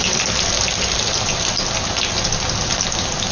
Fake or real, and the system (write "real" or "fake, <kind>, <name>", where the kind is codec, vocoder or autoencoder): real